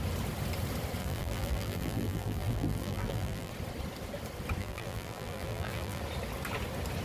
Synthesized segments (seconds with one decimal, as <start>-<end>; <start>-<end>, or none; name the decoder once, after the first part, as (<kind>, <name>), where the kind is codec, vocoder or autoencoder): 1.0-3.5 (vocoder, BigVGAN v2); 4.6-6.0